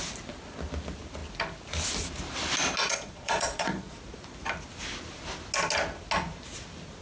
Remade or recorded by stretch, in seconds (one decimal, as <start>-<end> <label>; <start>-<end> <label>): 0.0-2.8 recorded; 2.8-3.9 remade; 3.9-7.0 recorded